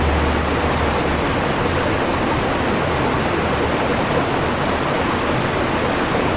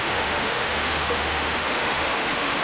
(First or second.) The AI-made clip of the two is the second